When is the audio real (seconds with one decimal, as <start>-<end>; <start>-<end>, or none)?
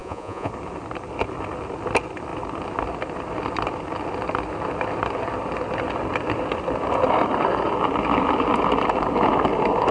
0.5-9.9